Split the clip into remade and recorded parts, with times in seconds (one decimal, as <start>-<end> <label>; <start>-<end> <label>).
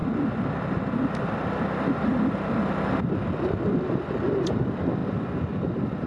0.0-6.1 recorded